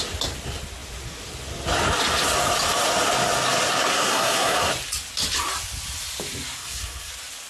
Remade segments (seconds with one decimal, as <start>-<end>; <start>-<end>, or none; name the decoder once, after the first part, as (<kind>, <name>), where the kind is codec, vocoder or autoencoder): 3.9-4.7 (codec, SNAC); 6.6-7.1